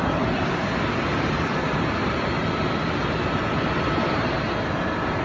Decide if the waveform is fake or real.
real